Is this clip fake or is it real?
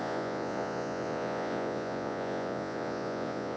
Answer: fake